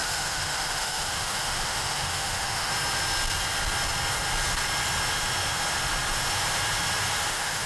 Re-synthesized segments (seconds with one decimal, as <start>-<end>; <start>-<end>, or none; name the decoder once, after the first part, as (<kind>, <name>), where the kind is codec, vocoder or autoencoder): 0.0-2.7 (autoencoder, DAC-VAE); 7.3-7.7